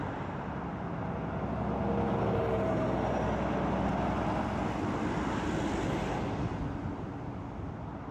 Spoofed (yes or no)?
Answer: no